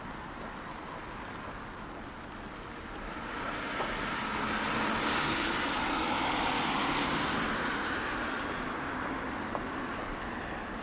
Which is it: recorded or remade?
recorded